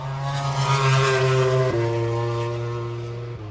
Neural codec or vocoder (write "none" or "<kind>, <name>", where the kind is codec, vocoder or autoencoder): none